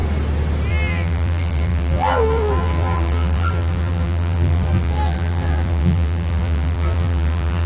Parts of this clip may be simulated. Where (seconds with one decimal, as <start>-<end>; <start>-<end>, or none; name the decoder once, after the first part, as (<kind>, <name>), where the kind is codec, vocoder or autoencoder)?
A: 0.7-7.7 (vocoder, BigVGAN v2)

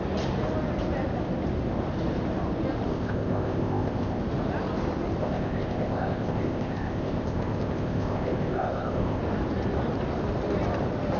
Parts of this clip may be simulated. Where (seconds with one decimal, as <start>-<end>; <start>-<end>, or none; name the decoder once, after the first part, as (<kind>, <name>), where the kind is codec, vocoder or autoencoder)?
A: 2.9-4.2 (codec, ZipCodec); 5.2-9.2

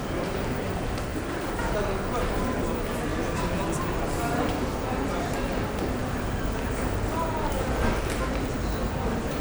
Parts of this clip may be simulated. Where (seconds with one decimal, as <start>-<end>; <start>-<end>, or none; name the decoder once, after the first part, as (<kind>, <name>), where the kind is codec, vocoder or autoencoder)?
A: none

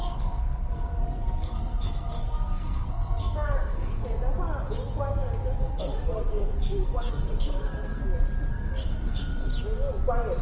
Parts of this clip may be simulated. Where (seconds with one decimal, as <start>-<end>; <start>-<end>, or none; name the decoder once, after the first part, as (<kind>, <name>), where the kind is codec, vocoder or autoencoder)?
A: 0.0-4.0 (codec, SNAC); 5.6-8.0; 8.5-9.5

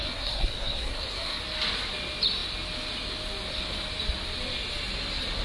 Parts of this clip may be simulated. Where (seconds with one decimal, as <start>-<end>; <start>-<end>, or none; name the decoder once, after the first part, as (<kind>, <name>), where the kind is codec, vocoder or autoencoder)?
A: 0.0-1.4 (codec, SNAC)

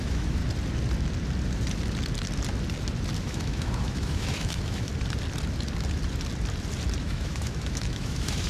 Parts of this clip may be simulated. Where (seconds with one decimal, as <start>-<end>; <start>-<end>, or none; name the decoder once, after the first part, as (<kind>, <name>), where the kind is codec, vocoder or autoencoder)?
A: 0.0-0.4 (autoencoder, DAC-VAE); 3.2-4.9; 7.0-8.5

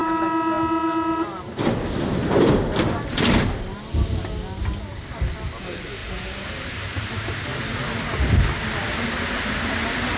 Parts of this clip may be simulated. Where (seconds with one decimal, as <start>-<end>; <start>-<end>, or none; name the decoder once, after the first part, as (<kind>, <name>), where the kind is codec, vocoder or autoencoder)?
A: none

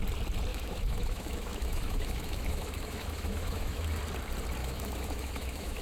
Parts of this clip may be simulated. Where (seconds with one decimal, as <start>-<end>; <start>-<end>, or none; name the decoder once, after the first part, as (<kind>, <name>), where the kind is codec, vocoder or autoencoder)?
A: 0.5-4.0 (autoencoder, DAC-VAE); 4.6-5.8